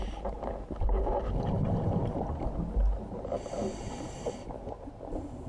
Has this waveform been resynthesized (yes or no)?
no